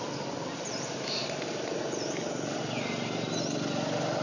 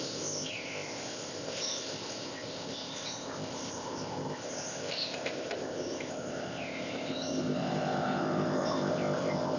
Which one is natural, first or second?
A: first